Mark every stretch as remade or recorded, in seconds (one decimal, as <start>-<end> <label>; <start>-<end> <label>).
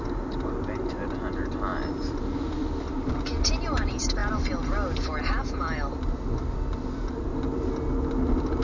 0.0-8.6 recorded